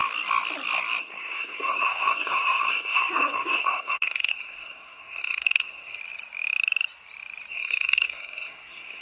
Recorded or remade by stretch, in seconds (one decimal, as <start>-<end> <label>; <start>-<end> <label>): 0.0-1.0 recorded; 1.0-6.0 remade; 6.0-7.5 recorded; 7.5-9.0 remade